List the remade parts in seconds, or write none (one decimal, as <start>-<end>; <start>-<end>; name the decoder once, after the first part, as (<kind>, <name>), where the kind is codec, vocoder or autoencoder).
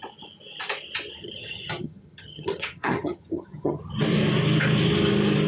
1.2-3.8 (vocoder, HiFi-GAN)